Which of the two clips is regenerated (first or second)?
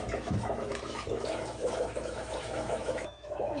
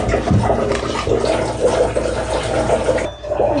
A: first